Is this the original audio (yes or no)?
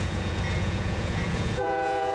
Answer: no